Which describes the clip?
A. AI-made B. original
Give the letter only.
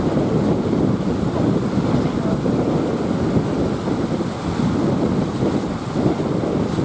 B